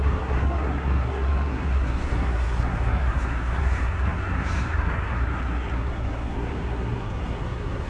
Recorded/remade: remade